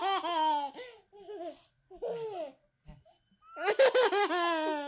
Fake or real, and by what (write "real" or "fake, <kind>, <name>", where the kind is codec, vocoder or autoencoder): real